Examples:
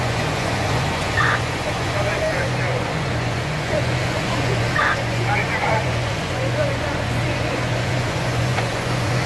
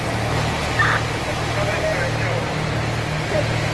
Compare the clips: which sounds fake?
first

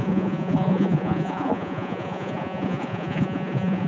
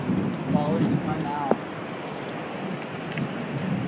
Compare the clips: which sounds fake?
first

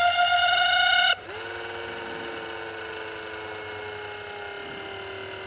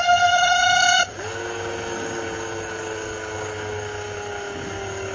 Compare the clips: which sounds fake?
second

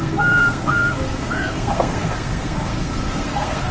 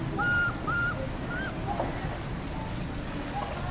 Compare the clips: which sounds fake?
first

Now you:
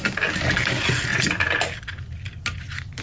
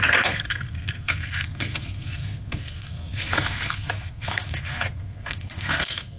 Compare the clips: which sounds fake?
second